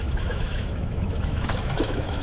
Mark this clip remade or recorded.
remade